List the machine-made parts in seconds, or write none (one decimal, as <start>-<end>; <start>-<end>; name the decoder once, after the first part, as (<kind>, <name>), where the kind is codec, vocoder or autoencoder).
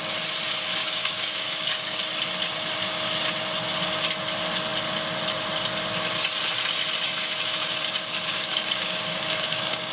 0.8-2.0 (codec, DAC); 8.3-9.9